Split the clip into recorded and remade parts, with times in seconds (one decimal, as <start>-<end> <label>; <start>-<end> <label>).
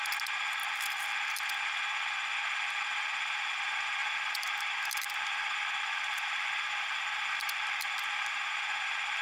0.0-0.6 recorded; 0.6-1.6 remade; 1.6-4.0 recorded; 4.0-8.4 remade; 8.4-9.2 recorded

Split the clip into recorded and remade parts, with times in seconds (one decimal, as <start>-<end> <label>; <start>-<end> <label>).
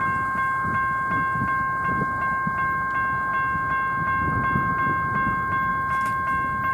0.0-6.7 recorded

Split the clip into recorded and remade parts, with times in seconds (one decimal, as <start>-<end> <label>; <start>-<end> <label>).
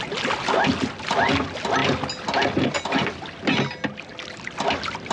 0.0-5.1 recorded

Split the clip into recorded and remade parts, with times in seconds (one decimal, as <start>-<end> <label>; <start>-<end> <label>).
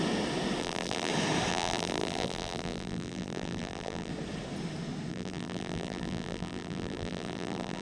0.0-0.6 recorded; 0.6-1.1 remade; 1.1-1.5 recorded; 1.5-4.1 remade; 4.1-5.1 recorded; 5.1-7.8 remade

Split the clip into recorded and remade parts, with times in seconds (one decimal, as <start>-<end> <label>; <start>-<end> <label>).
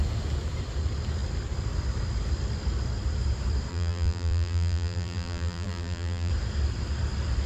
0.0-3.7 recorded; 3.7-6.3 remade; 6.3-7.5 recorded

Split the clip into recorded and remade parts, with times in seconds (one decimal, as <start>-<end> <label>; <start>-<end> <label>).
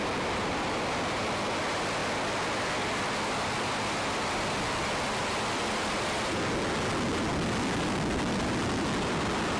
0.0-9.6 recorded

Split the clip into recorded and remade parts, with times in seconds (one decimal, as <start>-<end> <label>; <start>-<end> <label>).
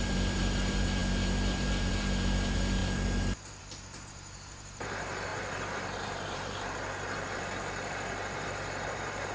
0.0-9.3 remade